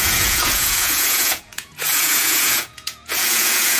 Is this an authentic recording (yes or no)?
no